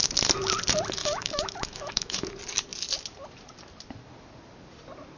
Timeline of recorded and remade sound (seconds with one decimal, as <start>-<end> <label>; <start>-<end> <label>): 0.0-1.0 recorded; 1.0-2.3 remade; 2.3-5.2 recorded